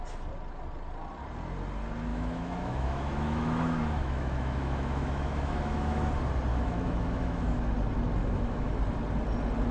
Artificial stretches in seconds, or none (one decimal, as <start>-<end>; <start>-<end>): 2.1-6.1; 6.5-7.7; 8.2-8.8